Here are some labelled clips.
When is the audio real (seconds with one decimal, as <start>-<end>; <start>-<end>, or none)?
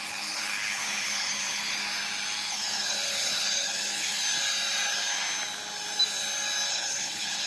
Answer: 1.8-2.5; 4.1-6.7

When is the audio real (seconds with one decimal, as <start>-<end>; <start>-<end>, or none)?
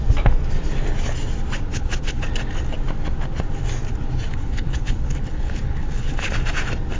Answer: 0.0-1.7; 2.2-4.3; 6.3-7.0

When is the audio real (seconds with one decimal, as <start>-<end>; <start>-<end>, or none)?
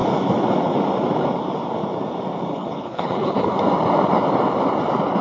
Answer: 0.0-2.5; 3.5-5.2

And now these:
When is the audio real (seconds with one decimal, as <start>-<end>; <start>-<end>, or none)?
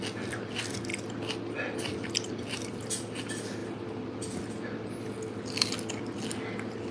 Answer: 0.0-6.9